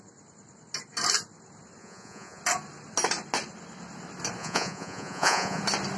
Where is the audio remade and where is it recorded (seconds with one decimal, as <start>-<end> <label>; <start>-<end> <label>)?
0.0-1.8 recorded; 1.8-2.4 remade; 2.4-4.4 recorded; 4.4-5.6 remade; 5.6-6.0 recorded